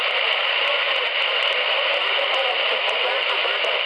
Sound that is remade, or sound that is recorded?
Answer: recorded